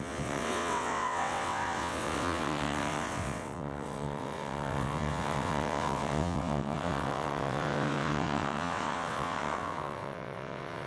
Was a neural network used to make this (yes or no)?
yes